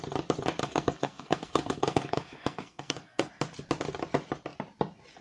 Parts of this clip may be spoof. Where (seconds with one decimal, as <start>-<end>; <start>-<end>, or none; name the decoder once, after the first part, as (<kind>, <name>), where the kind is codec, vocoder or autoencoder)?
0.6-3.3 (codec, SNAC)